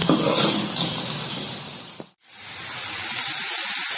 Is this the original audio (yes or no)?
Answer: yes